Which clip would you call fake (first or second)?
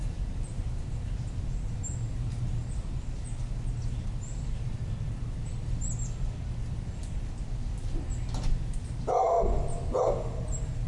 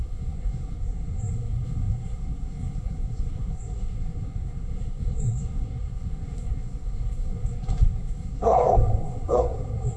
second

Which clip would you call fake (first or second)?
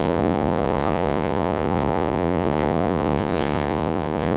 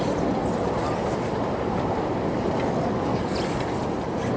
first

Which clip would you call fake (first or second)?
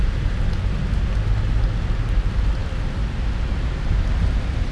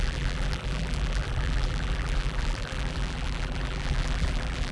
second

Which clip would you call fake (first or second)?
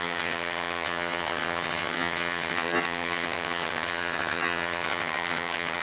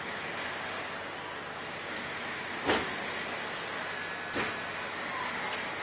first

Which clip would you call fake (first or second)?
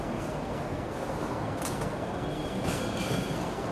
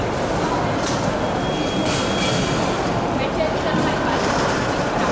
first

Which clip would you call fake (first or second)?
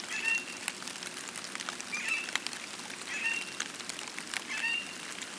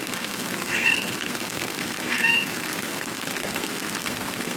second